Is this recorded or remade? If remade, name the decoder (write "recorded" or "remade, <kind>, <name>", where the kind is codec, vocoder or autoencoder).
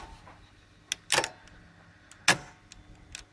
recorded